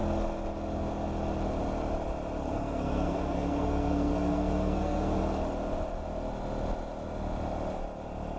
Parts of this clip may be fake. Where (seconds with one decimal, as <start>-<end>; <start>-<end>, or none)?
2.4-5.2